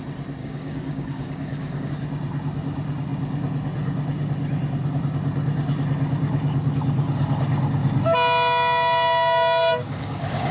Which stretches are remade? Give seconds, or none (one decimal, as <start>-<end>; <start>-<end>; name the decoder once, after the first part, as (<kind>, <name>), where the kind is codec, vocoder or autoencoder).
0.4-1.9 (codec, DAC); 9.6-10.5